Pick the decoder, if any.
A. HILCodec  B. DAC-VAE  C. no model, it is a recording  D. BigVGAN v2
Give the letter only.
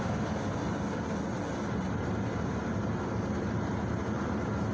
C